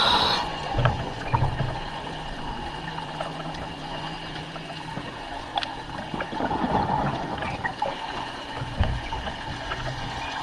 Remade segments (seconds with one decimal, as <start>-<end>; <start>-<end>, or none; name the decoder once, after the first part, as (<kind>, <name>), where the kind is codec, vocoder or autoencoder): 0.0-5.5 (vocoder, Vocos); 6.0-10.4